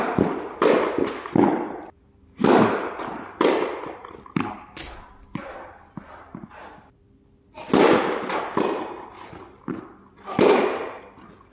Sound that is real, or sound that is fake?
real